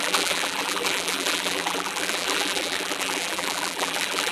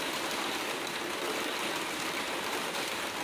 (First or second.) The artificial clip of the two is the first